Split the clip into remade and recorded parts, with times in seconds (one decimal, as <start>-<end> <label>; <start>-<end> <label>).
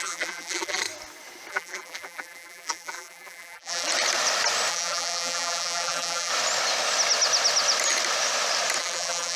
0.0-0.8 remade; 0.8-1.5 recorded; 1.5-3.9 remade; 3.9-4.7 recorded; 4.7-6.3 remade; 6.3-8.8 recorded; 8.8-9.4 remade